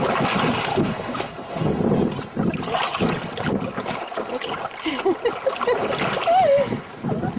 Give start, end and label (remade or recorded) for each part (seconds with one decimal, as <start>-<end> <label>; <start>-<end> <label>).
0.0-0.7 recorded; 0.7-1.8 remade; 1.8-7.4 recorded